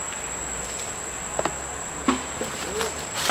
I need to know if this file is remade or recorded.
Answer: recorded